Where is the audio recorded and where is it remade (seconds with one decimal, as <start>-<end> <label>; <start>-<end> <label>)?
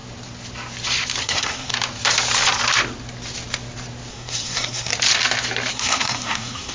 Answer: 0.0-1.2 recorded; 1.2-1.7 remade; 1.7-4.1 recorded; 4.1-4.9 remade; 4.9-5.7 recorded; 5.7-6.7 remade